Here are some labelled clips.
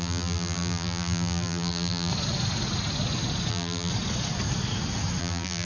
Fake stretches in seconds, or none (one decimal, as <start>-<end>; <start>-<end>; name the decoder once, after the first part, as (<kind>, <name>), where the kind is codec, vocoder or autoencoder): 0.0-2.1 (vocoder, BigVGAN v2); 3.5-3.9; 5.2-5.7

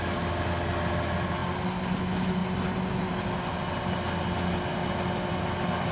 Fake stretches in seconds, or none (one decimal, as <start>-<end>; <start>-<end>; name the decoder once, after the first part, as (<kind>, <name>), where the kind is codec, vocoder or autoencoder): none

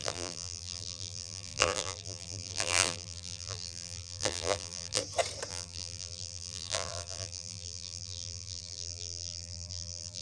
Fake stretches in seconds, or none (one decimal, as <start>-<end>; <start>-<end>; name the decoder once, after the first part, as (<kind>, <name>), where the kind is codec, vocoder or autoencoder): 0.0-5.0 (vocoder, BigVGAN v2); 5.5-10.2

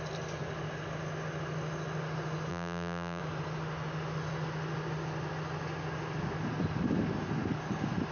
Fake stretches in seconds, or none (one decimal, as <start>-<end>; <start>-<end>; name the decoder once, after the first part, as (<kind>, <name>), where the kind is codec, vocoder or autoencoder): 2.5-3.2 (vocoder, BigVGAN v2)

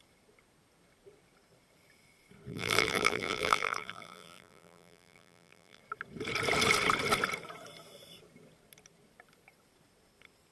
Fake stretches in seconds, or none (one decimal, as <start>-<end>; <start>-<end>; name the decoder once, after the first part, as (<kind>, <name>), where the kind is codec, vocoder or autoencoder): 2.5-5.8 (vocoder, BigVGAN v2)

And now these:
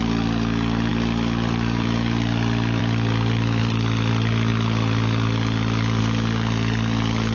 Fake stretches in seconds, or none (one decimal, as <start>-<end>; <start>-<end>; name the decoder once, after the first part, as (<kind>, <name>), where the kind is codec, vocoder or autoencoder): 0.9-2.8 (vocoder, BigVGAN v2); 3.6-4.1

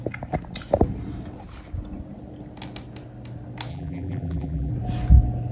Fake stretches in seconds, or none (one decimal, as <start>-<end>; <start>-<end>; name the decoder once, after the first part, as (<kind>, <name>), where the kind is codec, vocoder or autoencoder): 3.7-4.7 (vocoder, BigVGAN v2)

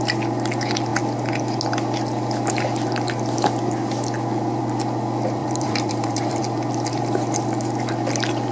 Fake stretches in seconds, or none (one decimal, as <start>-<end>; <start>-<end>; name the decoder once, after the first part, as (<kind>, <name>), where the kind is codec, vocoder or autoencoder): 5.4-6.4 (vocoder, BigVGAN v2)